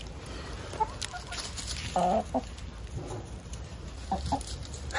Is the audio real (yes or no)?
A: yes